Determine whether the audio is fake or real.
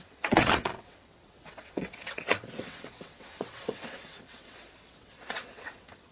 fake